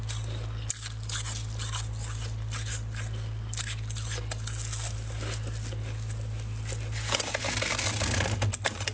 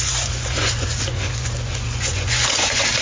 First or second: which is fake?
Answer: second